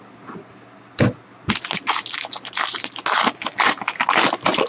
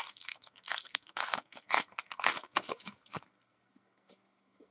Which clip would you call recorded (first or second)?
first